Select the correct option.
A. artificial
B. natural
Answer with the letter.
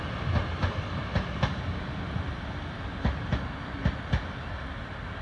B